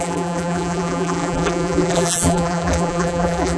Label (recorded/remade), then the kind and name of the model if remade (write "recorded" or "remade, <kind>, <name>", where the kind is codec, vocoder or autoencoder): remade, vocoder, BigVGAN v2